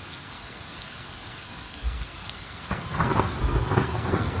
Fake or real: fake